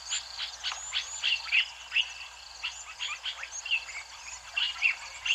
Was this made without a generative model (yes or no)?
yes